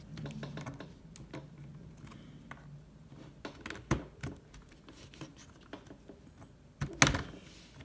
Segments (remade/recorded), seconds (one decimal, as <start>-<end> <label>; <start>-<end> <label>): 0.0-7.8 recorded